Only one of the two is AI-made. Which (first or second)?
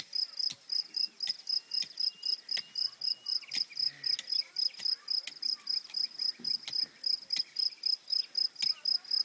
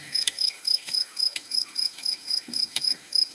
second